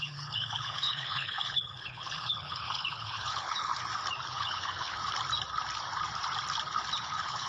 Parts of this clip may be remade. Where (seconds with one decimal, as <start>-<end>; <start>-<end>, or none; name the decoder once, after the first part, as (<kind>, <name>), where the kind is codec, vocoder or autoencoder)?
0.0-3.7 (codec, HILCodec); 4.3-5.0; 7.0-7.5